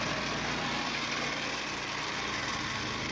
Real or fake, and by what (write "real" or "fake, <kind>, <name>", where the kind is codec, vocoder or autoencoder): real